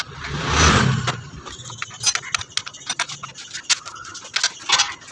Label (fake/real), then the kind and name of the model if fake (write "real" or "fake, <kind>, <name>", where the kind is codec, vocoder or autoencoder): real